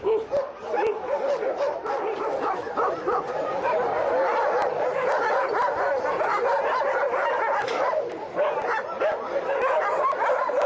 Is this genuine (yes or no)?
yes